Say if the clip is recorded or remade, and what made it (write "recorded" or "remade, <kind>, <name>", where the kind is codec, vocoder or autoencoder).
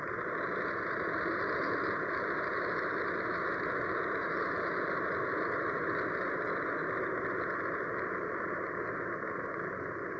recorded